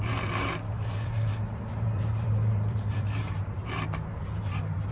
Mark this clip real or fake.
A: fake